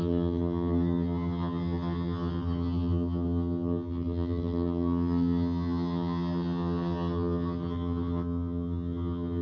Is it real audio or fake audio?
fake